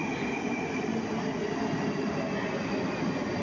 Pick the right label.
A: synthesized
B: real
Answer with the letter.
B